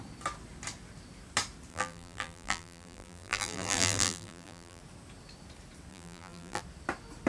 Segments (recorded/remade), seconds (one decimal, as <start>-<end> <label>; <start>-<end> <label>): 0.0-1.7 recorded; 1.7-4.8 remade; 4.8-5.9 recorded; 5.9-6.6 remade; 6.6-7.3 recorded